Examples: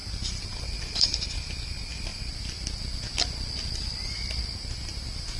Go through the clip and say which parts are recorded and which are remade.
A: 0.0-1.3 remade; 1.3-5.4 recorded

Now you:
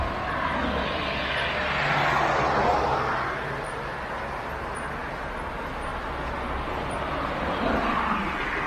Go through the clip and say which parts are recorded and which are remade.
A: 0.0-8.7 recorded

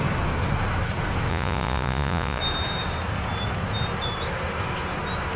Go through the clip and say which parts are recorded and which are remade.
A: 0.0-1.3 recorded; 1.3-2.4 remade; 2.4-5.4 recorded

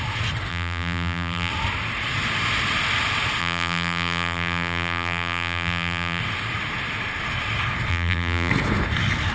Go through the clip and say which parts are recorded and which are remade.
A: 0.0-0.5 recorded; 0.5-1.5 remade; 1.5-3.4 recorded; 3.4-6.2 remade; 6.2-7.9 recorded; 7.9-8.5 remade; 8.5-9.3 recorded

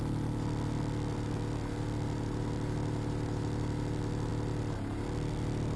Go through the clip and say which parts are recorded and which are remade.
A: 0.0-5.8 recorded

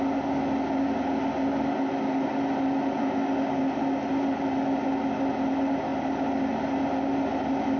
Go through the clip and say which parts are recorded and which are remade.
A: 0.0-7.8 recorded